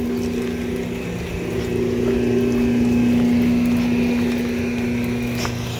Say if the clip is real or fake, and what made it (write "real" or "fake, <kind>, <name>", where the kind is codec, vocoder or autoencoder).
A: real